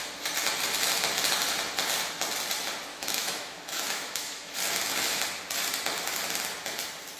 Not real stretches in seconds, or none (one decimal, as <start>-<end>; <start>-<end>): 2.9-4.6